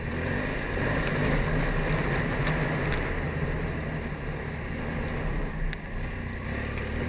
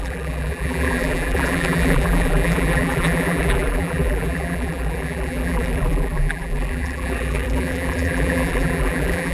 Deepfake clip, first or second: second